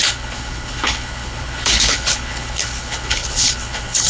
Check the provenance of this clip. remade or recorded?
remade